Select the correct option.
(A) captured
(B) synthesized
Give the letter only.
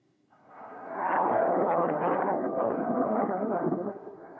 B